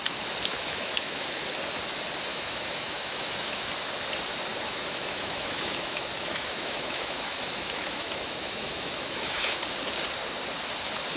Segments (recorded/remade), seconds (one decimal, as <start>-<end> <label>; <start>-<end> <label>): 0.0-0.5 recorded; 0.5-1.4 remade; 1.4-2.3 recorded; 2.3-3.7 remade; 3.7-4.5 recorded; 4.5-9.6 remade; 9.6-11.2 recorded